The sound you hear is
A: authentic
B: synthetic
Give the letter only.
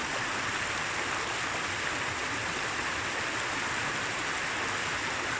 A